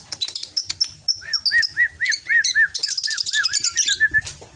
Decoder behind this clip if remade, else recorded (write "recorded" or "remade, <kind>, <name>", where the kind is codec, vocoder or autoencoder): recorded